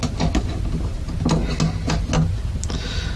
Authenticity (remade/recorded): recorded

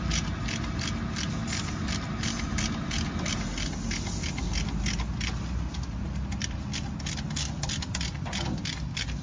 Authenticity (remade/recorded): recorded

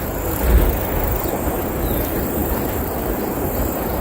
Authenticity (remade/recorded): recorded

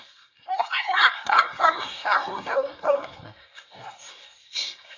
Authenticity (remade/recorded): remade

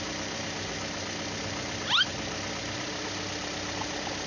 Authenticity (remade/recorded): recorded